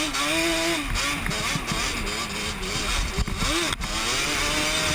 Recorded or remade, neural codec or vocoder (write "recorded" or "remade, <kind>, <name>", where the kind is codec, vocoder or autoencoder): recorded